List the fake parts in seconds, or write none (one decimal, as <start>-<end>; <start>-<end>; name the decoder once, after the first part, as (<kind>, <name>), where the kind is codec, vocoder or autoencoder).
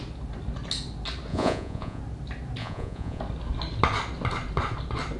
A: 1.3-2.0 (vocoder, Vocos); 2.6-3.2